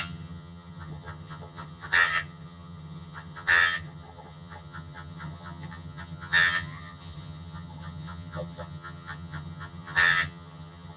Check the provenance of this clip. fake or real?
fake